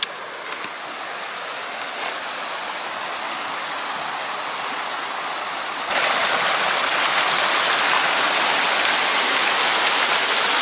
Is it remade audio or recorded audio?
recorded